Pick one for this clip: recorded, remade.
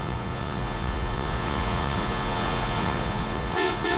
remade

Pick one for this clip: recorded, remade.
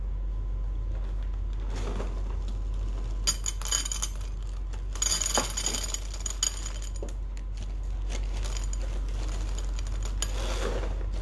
recorded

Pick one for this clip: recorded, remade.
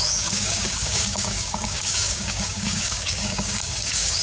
remade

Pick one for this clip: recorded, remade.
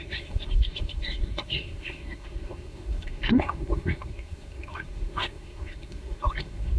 remade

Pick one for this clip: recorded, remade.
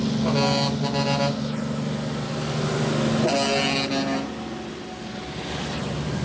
recorded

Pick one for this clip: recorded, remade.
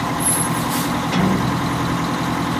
recorded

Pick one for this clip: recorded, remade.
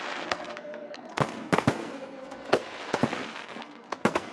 remade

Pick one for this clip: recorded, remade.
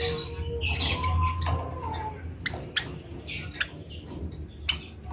recorded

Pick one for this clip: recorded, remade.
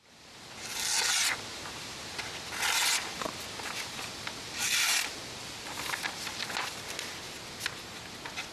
recorded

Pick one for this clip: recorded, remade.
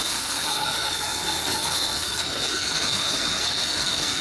remade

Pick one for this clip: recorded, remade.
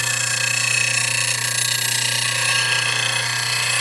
recorded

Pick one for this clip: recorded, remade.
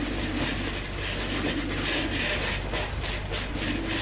recorded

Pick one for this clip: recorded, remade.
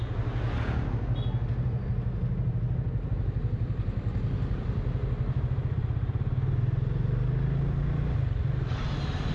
recorded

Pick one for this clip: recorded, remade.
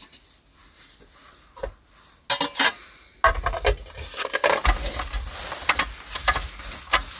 recorded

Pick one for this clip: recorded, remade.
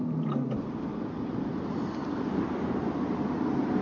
recorded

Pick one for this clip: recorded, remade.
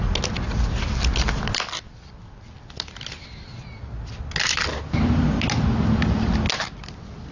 recorded